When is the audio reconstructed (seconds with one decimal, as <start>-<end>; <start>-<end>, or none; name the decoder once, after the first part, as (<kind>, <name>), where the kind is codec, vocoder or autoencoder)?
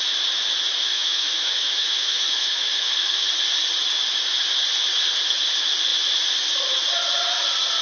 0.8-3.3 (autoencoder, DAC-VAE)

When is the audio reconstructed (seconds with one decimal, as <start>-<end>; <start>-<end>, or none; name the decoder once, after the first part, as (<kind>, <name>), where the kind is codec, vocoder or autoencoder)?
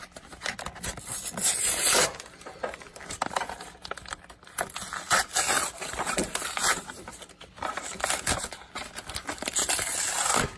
none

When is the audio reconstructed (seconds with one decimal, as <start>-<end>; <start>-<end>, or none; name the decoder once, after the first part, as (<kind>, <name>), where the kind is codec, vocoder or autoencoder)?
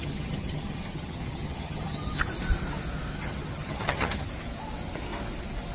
0.0-2.3 (vocoder, HiFi-GAN); 3.1-4.3